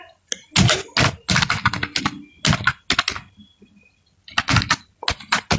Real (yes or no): yes